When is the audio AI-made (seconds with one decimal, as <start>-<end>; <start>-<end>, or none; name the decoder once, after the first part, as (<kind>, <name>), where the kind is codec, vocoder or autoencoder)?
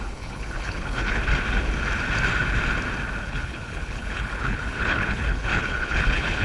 0.0-1.2 (codec, HILCodec); 3.2-6.4